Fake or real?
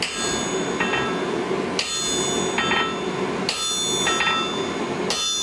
real